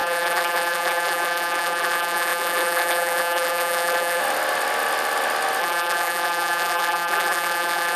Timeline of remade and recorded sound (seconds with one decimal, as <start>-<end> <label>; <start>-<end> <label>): 0.0-4.2 remade; 4.2-5.6 recorded; 5.6-8.0 remade